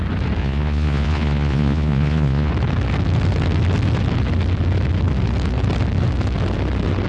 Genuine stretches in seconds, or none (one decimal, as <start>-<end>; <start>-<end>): 0.0-0.4; 2.5-7.1

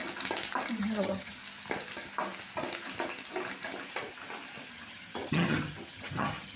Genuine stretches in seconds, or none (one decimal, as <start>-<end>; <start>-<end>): 0.0-0.8; 1.4-4.7

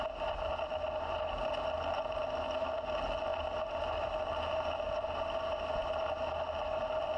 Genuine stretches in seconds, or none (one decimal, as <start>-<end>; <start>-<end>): 0.0-7.2

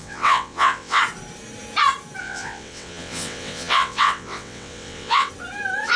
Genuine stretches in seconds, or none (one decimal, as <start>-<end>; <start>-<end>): 1.0-2.2; 5.3-6.0

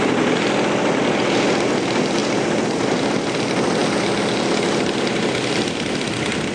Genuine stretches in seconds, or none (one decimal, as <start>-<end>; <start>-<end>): 0.0-6.5